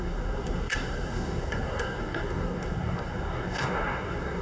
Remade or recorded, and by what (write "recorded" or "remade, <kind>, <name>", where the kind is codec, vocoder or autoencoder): remade, codec, SNAC